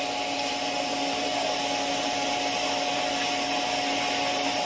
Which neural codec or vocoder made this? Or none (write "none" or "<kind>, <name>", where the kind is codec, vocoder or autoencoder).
none